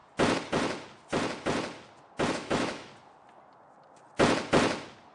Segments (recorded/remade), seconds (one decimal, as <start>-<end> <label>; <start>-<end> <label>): 0.0-2.3 recorded; 2.3-2.9 remade; 2.9-5.1 recorded